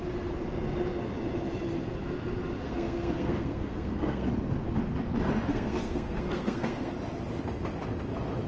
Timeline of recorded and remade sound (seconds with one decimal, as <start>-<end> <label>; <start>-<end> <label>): 0.0-2.6 recorded; 2.6-4.3 remade; 4.3-5.5 recorded; 5.5-6.9 remade; 6.9-8.5 recorded